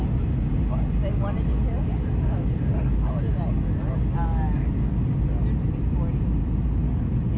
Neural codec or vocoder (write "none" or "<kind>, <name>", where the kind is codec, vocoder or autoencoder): none